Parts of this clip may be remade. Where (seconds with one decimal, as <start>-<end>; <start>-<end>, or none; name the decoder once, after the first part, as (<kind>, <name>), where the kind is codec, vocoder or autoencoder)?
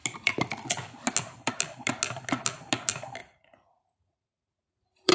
3.2-5.1 (vocoder, Vocos)